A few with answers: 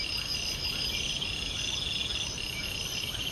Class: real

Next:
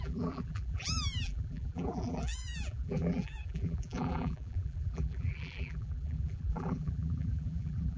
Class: fake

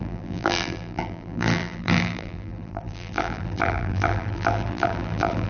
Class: fake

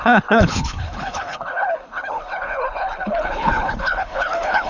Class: fake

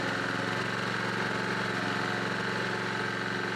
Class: real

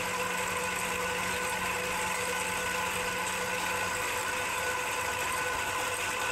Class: real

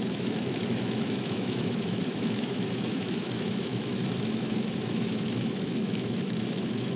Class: fake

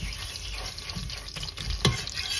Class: real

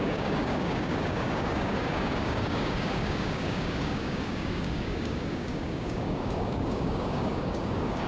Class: fake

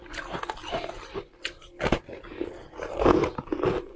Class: real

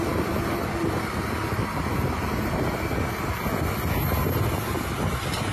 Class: real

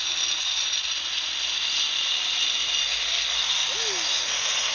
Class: real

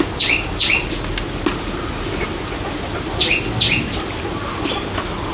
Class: real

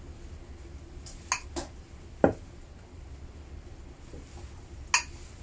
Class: real